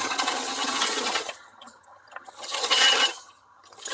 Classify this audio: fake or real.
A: fake